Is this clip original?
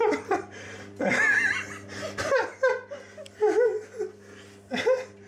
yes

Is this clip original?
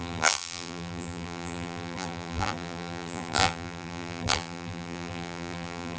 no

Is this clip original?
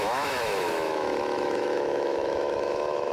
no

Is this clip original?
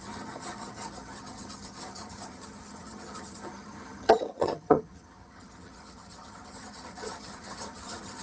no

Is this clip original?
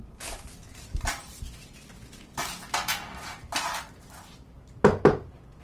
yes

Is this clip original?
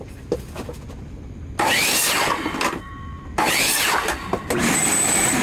yes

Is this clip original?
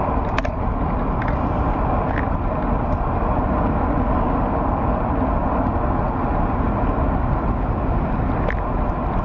yes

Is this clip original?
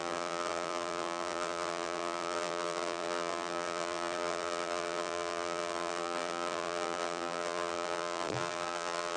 no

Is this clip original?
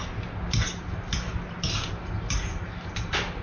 yes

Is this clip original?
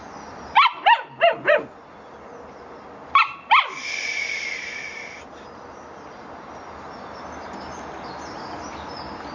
yes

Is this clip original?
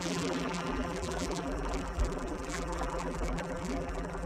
no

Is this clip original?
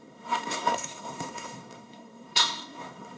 no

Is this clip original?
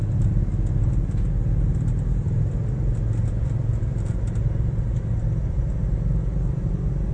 yes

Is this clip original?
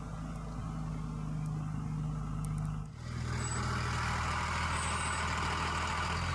yes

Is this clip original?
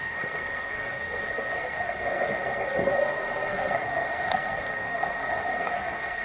no